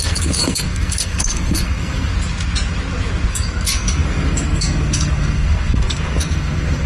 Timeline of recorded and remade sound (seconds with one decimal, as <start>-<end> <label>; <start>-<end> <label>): 0.0-2.1 remade; 2.1-3.3 recorded; 3.3-6.9 remade